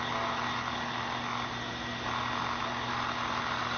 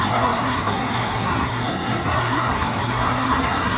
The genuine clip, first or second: first